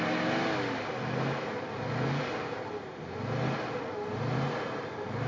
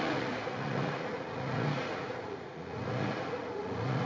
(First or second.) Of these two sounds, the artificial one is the second